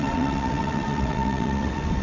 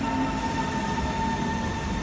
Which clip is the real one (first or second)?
second